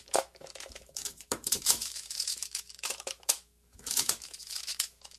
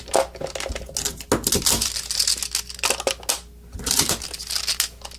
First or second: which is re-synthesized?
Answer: first